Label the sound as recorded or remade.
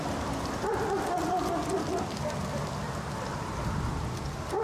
recorded